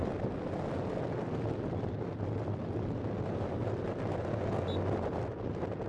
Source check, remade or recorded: recorded